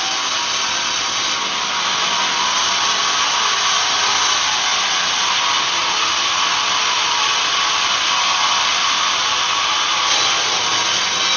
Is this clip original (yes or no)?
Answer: yes